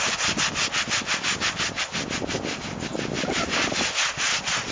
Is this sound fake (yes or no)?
no